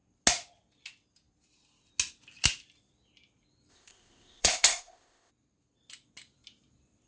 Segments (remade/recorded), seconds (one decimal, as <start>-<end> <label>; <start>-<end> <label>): 0.0-3.7 recorded; 3.7-5.3 remade; 5.3-7.1 recorded